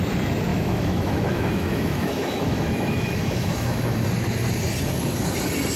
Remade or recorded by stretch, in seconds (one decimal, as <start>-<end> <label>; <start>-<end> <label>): 0.0-0.5 recorded; 0.5-4.0 remade; 4.0-5.8 recorded